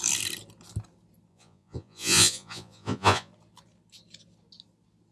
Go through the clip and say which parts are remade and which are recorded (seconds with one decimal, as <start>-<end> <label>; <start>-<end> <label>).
0.0-1.3 recorded; 1.3-3.3 remade; 3.3-5.1 recorded